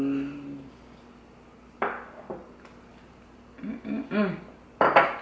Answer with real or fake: real